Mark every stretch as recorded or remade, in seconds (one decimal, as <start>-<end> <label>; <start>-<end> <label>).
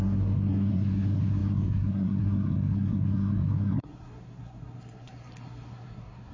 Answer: 0.0-6.3 remade